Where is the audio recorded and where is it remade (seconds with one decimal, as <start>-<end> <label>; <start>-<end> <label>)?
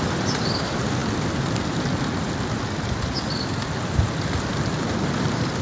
0.0-5.6 recorded